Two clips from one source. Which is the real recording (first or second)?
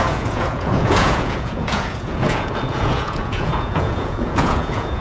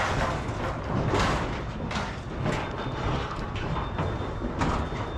second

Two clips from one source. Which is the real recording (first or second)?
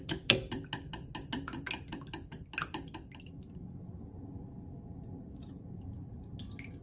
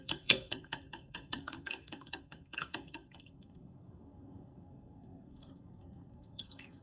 first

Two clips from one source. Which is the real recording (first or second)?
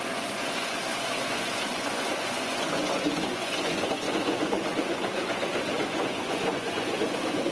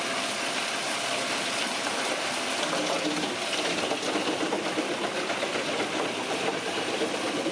second